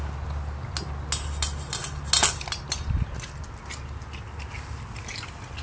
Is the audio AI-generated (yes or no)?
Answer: no